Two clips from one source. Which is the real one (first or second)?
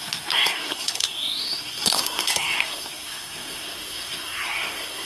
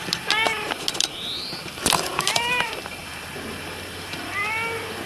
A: second